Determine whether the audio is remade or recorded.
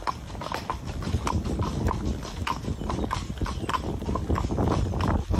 recorded